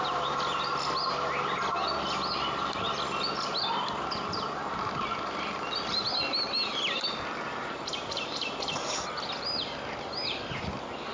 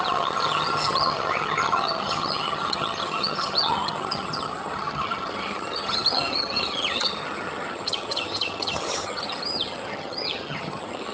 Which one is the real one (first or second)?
first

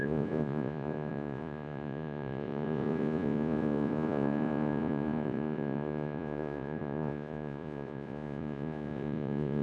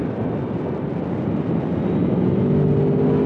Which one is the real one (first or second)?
second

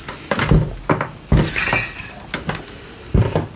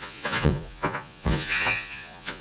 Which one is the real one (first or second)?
first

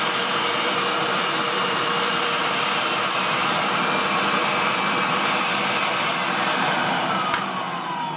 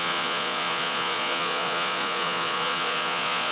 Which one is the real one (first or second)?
first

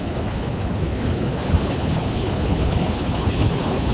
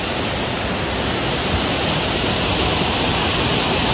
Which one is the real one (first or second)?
second